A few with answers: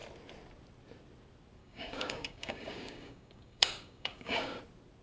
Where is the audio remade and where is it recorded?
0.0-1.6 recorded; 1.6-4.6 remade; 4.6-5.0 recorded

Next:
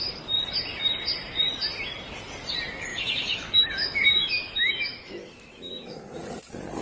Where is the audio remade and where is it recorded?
0.0-2.9 recorded; 2.9-6.2 remade; 6.2-6.8 recorded

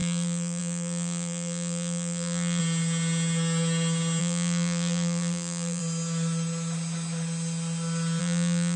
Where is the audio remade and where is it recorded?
0.0-2.6 remade; 2.6-4.2 recorded; 4.2-5.8 remade; 5.8-8.2 recorded; 8.2-8.8 remade